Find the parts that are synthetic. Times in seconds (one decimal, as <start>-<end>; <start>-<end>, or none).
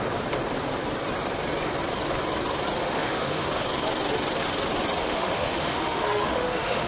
2.8-3.5; 5.0-6.9